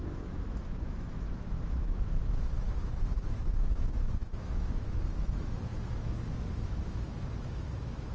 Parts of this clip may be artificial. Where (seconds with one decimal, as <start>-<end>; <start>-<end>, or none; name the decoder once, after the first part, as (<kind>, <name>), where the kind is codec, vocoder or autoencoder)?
0.0-8.1 (autoencoder, DAC-VAE)